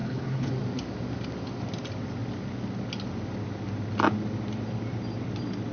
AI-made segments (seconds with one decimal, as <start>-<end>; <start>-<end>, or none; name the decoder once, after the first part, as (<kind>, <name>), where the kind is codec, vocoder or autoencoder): 0.0-0.5 (codec, HILCodec)